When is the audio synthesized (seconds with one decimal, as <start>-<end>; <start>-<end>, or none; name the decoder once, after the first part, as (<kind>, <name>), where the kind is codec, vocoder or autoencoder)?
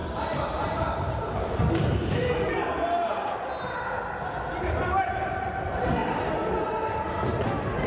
0.0-2.5 (vocoder, BigVGAN v2); 4.8-6.0